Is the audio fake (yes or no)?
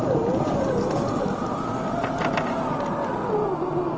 no